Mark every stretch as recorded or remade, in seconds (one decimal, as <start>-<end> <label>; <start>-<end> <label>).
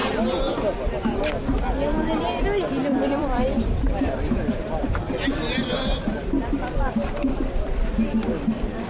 0.0-2.9 recorded; 2.9-6.9 remade; 6.9-8.9 recorded